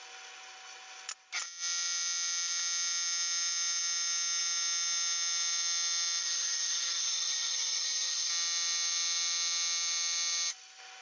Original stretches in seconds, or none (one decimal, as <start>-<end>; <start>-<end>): 0.0-6.2; 8.3-11.0